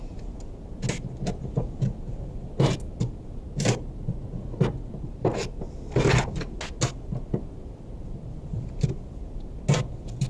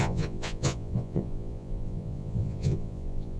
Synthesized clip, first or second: second